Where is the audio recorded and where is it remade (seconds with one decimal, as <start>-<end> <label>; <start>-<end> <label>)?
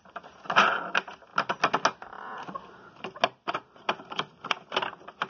0.0-5.3 recorded